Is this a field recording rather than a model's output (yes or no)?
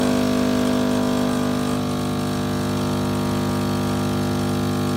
yes